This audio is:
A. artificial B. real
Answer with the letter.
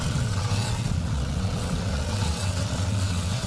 A